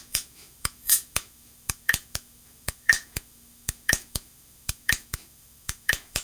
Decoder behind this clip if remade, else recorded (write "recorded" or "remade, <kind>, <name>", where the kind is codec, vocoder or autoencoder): remade, autoencoder, DAC-VAE